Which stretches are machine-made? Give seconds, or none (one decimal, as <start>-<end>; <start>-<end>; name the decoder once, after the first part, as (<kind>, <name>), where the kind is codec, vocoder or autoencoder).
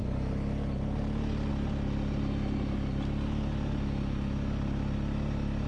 none